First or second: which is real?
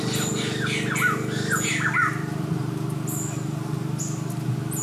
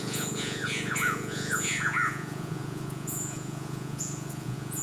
first